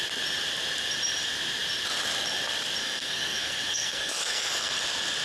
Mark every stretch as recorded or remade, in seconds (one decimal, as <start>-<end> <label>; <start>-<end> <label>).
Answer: 0.0-2.8 recorded; 2.8-4.8 remade; 4.8-5.2 recorded